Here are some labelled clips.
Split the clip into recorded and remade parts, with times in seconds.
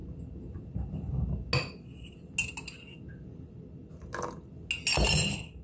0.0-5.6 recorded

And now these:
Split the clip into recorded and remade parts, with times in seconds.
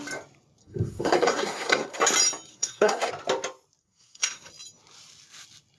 0.0-0.6 recorded; 0.6-2.0 remade; 2.0-2.5 recorded; 2.5-3.1 remade; 3.1-3.8 recorded; 3.8-4.5 remade; 4.5-5.8 recorded